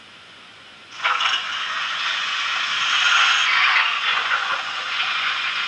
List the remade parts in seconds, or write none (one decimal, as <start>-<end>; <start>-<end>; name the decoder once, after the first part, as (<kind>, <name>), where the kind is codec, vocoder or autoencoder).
0.0-2.5 (vocoder, Vocos); 3.1-5.7

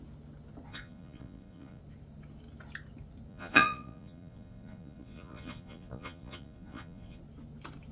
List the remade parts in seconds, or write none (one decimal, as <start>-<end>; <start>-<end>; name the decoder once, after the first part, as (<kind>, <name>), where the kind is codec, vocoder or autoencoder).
0.7-1.8 (vocoder, Vocos); 3.3-7.2

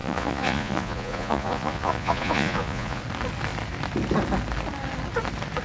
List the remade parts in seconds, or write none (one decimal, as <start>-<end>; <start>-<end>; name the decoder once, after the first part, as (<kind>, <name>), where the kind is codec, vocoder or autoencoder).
0.0-3.0 (vocoder, Vocos)

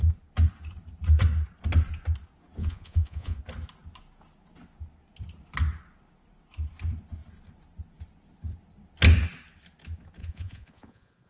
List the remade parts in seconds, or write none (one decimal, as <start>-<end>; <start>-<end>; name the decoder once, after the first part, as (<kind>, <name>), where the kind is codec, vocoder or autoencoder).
2.6-3.4 (vocoder, Vocos); 10.2-11.3

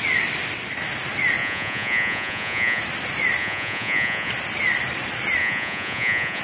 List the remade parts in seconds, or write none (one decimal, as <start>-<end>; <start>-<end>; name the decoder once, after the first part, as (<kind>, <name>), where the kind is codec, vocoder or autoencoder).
1.4-2.8 (vocoder, Vocos); 3.4-4.3; 5.4-6.4

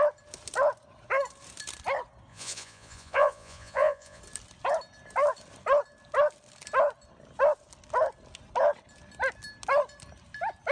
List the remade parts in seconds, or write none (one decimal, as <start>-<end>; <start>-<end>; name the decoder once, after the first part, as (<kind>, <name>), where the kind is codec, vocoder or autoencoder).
2.3-4.2 (vocoder, Vocos)